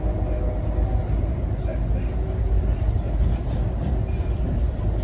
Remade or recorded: recorded